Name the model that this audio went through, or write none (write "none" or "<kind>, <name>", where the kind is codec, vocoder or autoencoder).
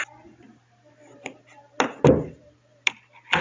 none